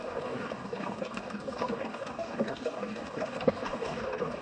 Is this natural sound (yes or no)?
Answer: no